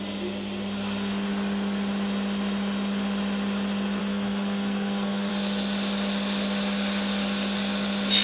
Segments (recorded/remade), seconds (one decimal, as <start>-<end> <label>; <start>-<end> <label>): 0.0-4.0 recorded; 4.0-5.3 remade; 5.3-8.2 recorded